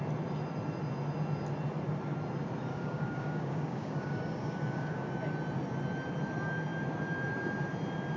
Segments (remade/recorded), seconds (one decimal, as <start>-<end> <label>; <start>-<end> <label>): 0.0-2.7 recorded; 2.7-5.1 remade; 5.1-8.2 recorded